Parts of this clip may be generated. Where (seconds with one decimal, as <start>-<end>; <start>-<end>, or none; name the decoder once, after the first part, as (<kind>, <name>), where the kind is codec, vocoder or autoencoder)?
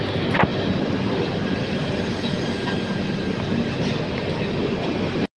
none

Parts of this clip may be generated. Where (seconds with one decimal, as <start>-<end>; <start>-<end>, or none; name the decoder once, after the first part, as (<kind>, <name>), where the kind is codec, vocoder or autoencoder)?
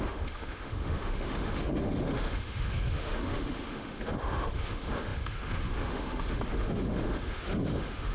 0.0-8.1 (autoencoder, DAC-VAE)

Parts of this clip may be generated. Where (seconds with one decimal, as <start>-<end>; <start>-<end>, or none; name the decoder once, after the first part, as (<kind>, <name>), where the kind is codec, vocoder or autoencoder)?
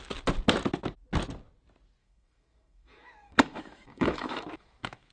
2.0-5.1 (autoencoder, DAC-VAE)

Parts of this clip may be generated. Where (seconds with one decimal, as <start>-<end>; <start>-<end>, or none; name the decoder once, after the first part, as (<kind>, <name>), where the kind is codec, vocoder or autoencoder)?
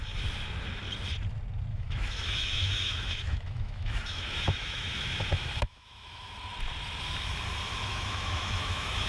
1.7-6.3 (autoencoder, DAC-VAE); 7.9-9.1